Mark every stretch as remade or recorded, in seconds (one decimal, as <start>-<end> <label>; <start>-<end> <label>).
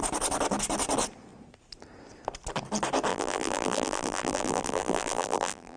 0.0-3.1 recorded; 3.1-5.8 remade